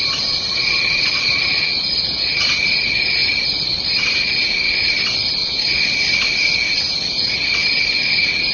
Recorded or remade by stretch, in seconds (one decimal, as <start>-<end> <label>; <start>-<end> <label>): 0.0-1.1 recorded; 1.1-2.5 remade; 2.5-5.4 recorded; 5.4-6.0 remade; 6.0-8.5 recorded